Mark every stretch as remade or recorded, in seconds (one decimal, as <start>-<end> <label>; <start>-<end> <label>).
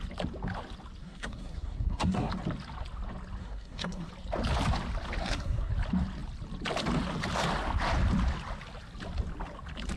0.0-1.0 recorded; 1.0-2.3 remade; 2.3-3.4 recorded; 3.4-4.1 remade; 4.1-5.2 recorded; 5.2-5.7 remade; 5.7-10.0 recorded